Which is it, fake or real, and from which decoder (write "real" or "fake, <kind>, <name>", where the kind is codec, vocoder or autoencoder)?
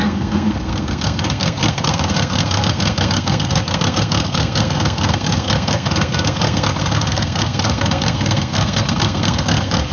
fake, codec, SNAC